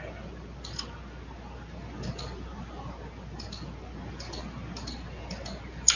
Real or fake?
real